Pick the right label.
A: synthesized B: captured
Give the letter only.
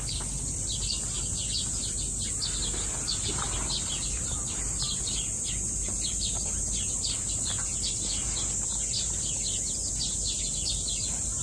B